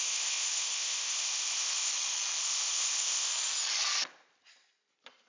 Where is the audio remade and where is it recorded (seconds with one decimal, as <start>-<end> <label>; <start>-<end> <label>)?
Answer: 0.0-1.9 remade; 1.9-2.4 recorded; 2.4-3.3 remade; 3.3-5.3 recorded